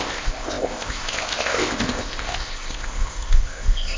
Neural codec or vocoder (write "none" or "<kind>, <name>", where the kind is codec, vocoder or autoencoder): codec, ZipCodec